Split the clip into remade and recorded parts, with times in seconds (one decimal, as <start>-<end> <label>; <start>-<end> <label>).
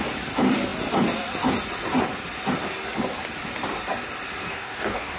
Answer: 0.0-4.5 recorded; 4.5-5.2 remade